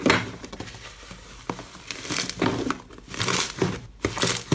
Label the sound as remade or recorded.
recorded